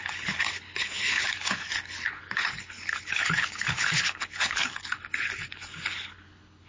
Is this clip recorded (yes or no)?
no